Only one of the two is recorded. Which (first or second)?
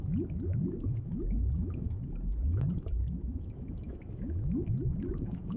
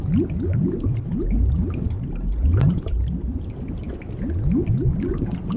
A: second